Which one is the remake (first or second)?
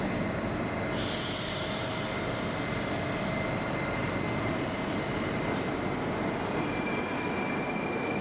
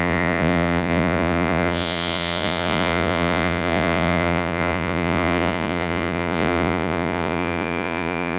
second